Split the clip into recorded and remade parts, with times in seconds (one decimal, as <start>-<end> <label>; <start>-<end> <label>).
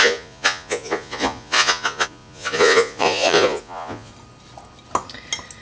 0.0-4.1 remade; 4.1-5.6 recorded